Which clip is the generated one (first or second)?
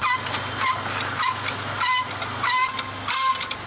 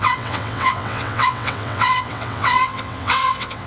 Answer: second